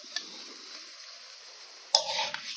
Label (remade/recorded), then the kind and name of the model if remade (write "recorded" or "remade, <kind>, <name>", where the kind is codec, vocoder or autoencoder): recorded